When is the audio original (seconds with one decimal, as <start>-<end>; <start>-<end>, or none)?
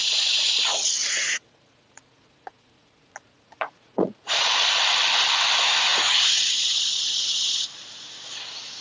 0.6-1.0; 4.4-5.9